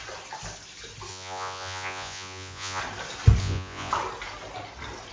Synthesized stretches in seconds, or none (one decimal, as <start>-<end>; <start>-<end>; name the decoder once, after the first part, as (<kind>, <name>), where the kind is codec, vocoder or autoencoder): 1.1-2.8 (vocoder, Vocos); 3.4-3.9